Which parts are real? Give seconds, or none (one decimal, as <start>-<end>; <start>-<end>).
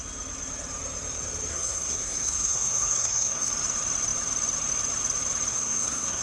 0.0-1.5; 3.5-5.5